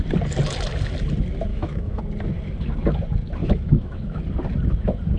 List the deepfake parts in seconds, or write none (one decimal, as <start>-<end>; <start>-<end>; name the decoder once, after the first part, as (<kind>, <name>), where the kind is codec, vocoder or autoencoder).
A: 1.5-2.0 (autoencoder, DAC-VAE); 3.4-4.2